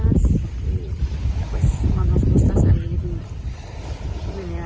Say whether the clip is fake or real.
real